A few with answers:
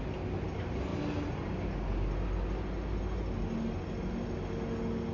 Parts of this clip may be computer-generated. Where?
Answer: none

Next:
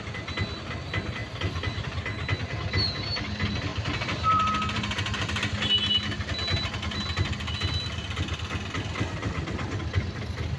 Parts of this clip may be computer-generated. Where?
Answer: 1.2-1.9 (vocoder, BigVGAN v2); 3.7-5.5